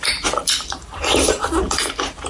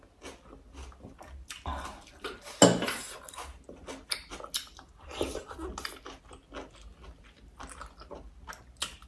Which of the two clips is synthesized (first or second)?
first